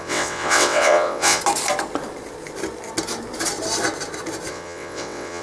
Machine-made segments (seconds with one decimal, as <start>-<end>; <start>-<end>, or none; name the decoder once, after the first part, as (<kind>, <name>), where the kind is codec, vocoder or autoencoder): 0.0-1.4 (vocoder, WaveNeXt); 4.5-5.4